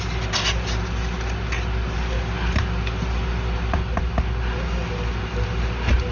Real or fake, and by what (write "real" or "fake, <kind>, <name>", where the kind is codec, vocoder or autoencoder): real